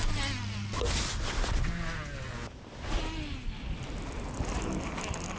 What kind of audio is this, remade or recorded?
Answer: recorded